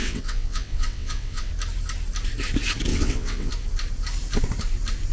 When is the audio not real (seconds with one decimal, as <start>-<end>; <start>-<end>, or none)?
0.0-1.5; 2.9-3.5